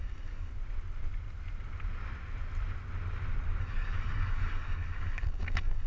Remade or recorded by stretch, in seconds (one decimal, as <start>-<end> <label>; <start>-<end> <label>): 0.0-0.5 remade; 0.5-3.6 recorded; 3.6-5.9 remade